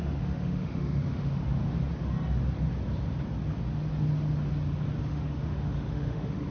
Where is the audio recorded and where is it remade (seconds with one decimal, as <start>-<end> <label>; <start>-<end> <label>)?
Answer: 0.0-1.6 remade; 1.6-5.0 recorded; 5.0-6.5 remade